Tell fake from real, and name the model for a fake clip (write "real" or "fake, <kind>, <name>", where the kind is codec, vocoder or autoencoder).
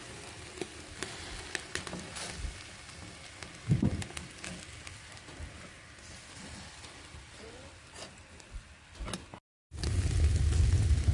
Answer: real